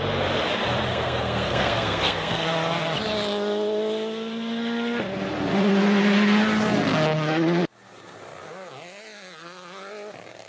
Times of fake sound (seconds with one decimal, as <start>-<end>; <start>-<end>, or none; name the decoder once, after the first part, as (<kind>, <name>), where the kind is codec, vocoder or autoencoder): 0.9-2.5 (codec, SNAC)